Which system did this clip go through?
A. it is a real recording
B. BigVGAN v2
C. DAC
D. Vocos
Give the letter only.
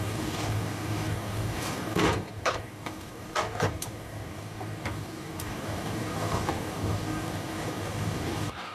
C